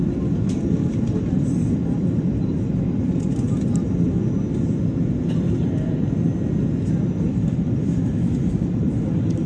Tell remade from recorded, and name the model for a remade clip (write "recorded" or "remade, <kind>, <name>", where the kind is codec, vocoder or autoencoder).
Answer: remade, vocoder, BigVGAN v2